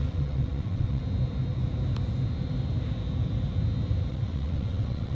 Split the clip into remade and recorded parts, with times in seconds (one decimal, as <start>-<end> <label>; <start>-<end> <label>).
0.0-1.0 remade; 1.0-4.1 recorded; 4.1-5.1 remade

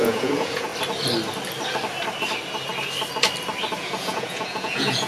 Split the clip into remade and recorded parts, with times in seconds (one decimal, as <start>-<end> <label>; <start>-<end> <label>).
0.0-0.7 remade; 0.7-3.8 recorded; 3.8-5.1 remade